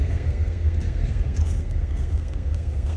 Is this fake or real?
fake